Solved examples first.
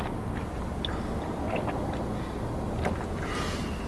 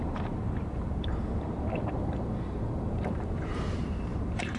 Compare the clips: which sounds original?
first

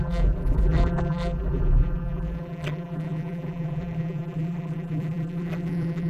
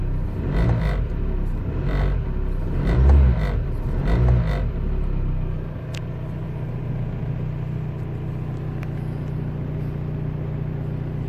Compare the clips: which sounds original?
second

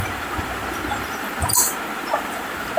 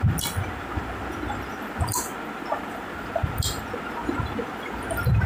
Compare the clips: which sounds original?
second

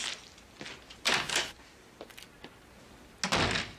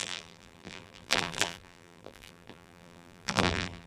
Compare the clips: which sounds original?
first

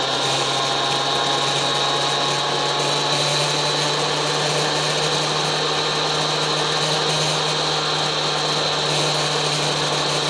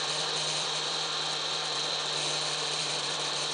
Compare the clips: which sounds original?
first